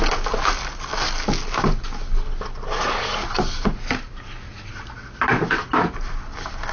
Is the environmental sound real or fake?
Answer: real